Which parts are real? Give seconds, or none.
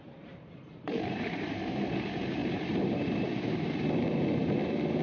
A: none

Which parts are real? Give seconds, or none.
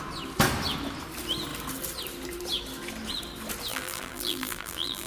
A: 0.0-3.7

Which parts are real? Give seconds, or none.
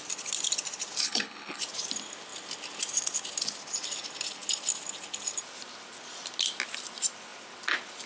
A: 0.0-1.0; 1.6-8.1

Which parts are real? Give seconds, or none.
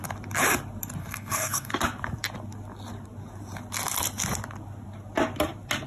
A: 0.0-1.0; 1.7-5.9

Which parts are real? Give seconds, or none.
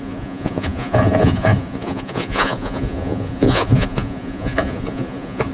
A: none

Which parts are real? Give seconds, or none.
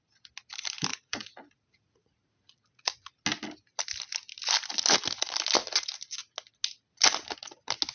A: 0.0-0.9; 3.1-7.9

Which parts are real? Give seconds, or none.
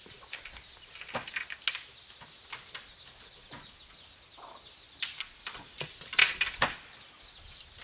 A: 0.0-7.8